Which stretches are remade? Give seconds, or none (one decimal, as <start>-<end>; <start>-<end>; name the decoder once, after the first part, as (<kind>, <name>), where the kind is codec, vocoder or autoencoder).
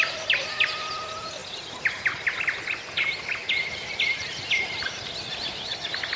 none